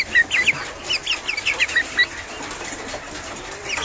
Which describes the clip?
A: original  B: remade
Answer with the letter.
A